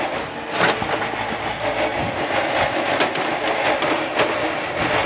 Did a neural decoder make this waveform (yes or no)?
no